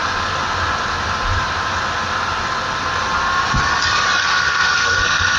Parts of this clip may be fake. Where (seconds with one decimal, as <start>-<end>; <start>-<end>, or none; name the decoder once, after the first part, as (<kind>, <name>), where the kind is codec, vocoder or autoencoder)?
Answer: 4.2-5.4 (codec, SNAC)